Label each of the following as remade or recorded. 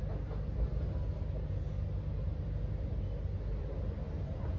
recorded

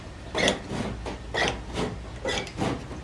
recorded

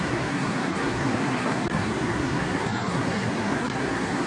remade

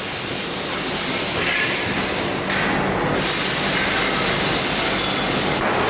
recorded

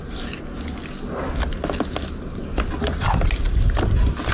recorded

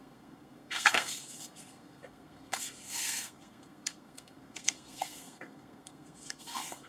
remade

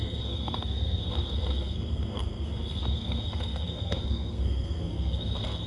remade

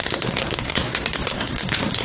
remade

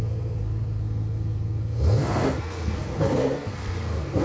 remade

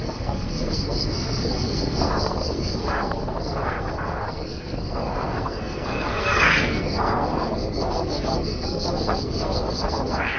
remade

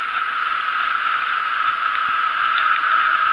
recorded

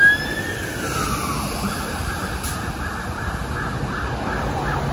recorded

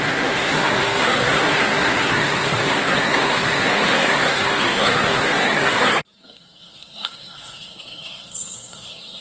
remade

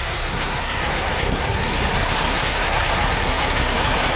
remade